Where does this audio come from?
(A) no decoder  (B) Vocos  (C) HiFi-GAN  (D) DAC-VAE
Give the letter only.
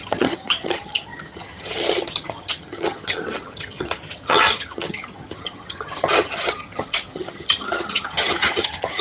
C